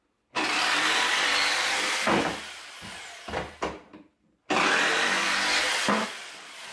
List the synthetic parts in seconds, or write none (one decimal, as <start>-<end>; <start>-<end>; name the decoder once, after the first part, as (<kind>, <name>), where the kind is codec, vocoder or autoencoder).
none